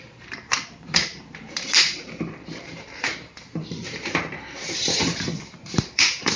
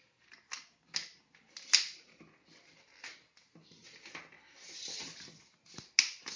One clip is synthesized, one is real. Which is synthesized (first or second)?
first